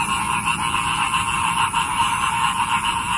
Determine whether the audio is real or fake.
real